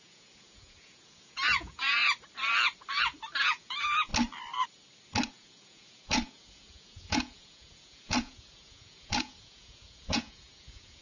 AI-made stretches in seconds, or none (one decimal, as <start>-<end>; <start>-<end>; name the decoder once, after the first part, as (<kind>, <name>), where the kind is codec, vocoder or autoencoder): 0.0-2.0 (vocoder, Vocos); 3.4-4.1; 5.3-11.0